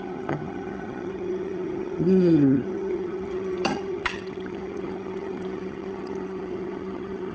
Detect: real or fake fake